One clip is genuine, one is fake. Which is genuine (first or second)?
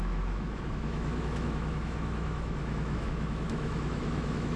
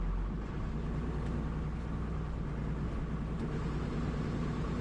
second